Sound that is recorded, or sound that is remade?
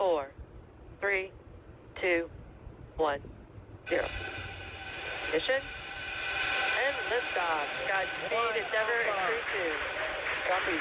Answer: recorded